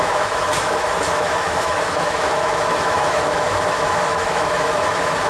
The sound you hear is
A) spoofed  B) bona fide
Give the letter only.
A